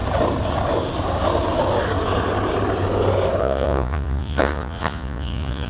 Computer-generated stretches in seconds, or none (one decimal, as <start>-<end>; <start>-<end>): 3.4-5.7